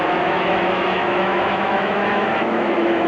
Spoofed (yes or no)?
yes